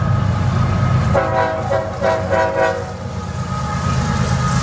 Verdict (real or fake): real